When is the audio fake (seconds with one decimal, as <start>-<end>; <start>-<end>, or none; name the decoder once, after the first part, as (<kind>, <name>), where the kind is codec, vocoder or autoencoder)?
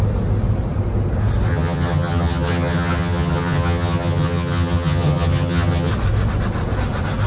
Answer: 1.5-5.9 (vocoder, HiFi-GAN)